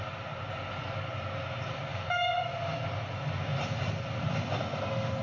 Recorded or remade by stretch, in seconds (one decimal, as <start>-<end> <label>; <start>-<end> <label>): 0.0-5.2 recorded